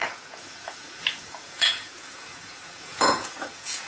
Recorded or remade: remade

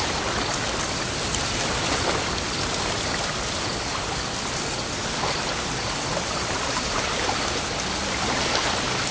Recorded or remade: recorded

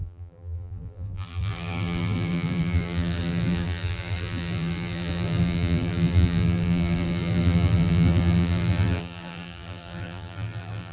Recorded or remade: remade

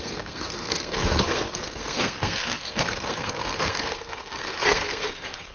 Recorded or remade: remade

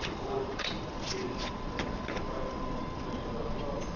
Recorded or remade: remade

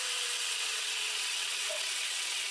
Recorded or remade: remade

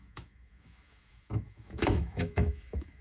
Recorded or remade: remade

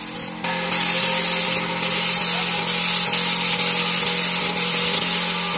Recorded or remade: recorded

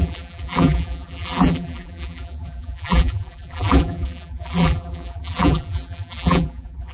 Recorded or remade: remade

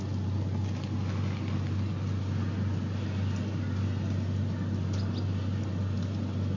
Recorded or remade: recorded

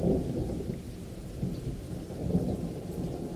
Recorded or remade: recorded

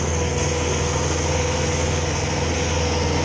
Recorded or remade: remade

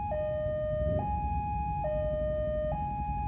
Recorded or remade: recorded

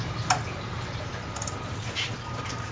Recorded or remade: recorded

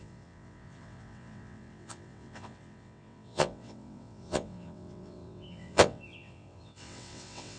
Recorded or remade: remade